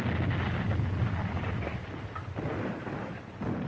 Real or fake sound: real